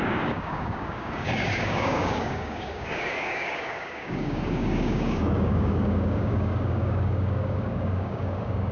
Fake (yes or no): yes